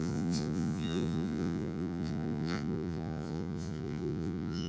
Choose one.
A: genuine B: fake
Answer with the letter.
B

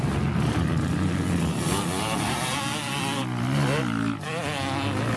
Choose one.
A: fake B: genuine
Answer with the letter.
B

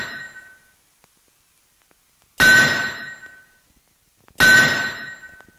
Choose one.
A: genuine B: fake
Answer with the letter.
A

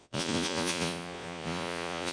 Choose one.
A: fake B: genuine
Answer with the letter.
A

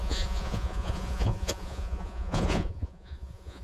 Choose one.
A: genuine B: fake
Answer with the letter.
B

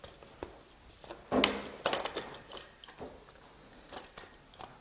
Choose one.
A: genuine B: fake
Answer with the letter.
A